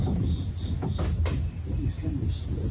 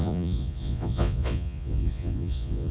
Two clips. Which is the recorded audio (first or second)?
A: first